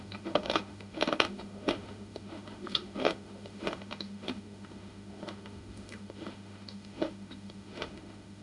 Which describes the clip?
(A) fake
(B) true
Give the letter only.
A